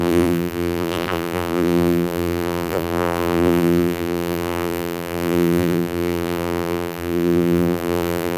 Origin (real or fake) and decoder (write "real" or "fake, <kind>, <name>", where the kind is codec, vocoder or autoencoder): fake, vocoder, BigVGAN v2